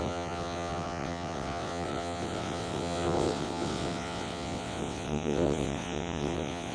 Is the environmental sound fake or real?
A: fake